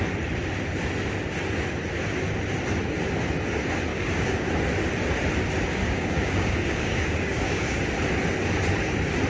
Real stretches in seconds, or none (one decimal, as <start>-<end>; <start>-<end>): 0.0-3.9; 4.5-5.8; 7.8-9.3